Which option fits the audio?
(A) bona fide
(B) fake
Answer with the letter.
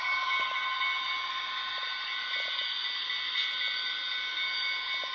A